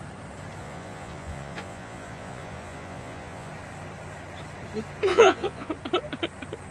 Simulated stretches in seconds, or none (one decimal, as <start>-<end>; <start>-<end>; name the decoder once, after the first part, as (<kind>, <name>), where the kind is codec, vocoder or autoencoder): 0.6-3.5 (vocoder, Vocos); 5.1-5.7